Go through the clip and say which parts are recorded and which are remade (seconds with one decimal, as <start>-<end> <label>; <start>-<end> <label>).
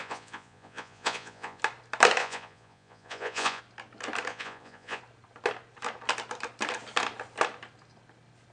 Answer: 0.0-1.6 remade; 1.6-2.2 recorded; 2.2-3.6 remade; 3.6-4.3 recorded; 4.3-5.0 remade; 5.0-8.5 recorded